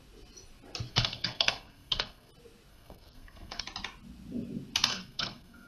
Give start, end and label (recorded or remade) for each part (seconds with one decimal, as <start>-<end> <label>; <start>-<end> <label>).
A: 0.0-0.9 recorded; 0.9-2.3 remade; 2.3-2.7 recorded; 2.7-3.6 remade; 3.6-4.9 recorded; 4.9-5.7 remade